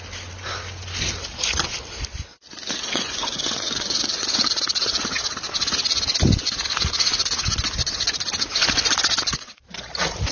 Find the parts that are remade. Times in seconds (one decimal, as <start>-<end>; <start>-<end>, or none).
2.3-4.5